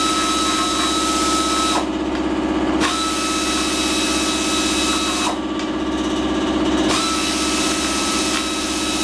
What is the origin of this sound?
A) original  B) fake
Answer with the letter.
A